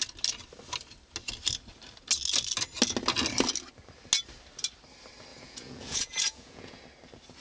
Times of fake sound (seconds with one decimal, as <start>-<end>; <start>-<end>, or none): 5.3-6.8